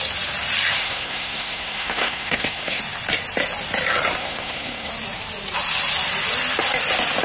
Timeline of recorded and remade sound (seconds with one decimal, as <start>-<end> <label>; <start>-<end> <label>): 0.0-0.8 recorded; 0.8-2.8 remade; 2.8-4.2 recorded; 4.2-4.9 remade; 4.9-7.2 recorded